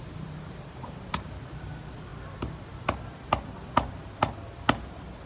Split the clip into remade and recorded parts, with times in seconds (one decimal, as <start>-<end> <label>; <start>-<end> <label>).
0.0-2.1 remade; 2.1-5.3 recorded